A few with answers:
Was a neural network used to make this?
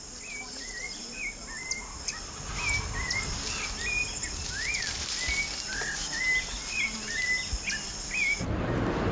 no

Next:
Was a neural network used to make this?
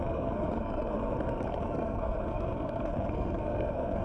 yes